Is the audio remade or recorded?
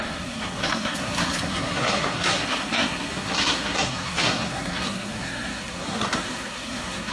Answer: remade